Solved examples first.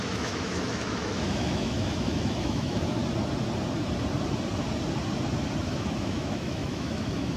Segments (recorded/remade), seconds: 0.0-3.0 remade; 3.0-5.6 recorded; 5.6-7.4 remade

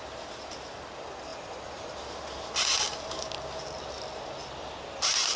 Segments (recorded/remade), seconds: 0.0-5.4 recorded

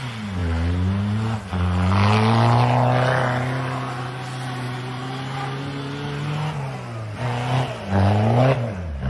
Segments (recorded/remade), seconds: 0.0-9.1 recorded

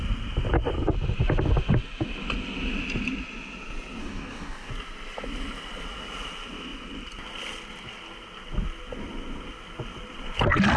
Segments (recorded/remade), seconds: 0.0-4.0 recorded; 4.0-4.7 remade; 4.7-10.8 recorded

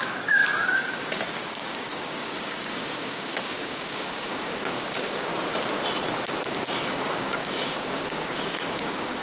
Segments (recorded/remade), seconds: 0.0-5.3 remade; 5.3-6.5 recorded; 6.5-9.2 remade

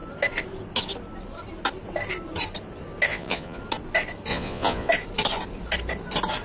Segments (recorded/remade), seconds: 0.0-3.1 recorded; 3.1-3.6 remade; 3.6-4.3 recorded; 4.3-4.9 remade; 4.9-6.4 recorded

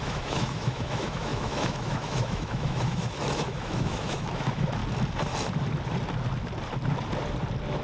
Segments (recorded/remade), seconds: 0.0-4.8 remade; 4.8-7.8 recorded